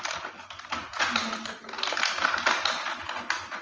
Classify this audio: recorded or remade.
recorded